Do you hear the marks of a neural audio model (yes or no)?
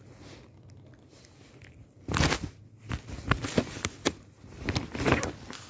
no